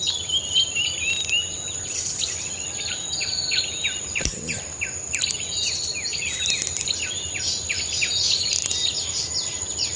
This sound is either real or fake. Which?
real